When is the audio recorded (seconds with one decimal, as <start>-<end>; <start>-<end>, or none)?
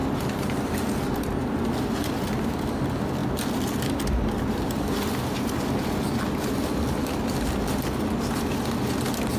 0.0-9.4